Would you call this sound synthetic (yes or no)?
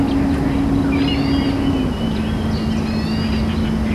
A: no